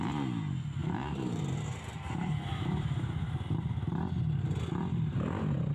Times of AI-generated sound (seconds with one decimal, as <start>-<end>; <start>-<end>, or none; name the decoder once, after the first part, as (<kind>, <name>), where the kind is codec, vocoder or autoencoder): 0.8-4.2 (vocoder, BigVGAN v2)